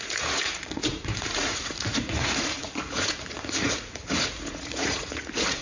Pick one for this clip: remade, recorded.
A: remade